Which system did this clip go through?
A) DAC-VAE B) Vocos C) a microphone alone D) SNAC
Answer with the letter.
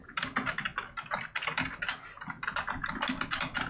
C